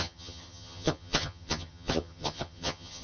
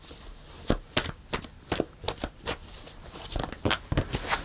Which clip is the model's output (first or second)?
first